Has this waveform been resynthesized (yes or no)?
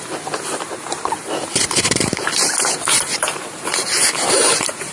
yes